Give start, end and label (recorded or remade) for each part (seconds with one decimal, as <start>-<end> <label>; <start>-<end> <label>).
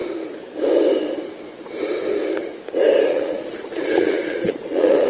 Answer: 0.0-3.1 recorded; 3.1-5.1 remade